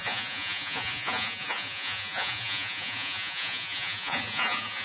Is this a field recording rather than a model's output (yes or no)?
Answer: no